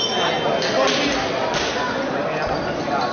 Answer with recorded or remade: recorded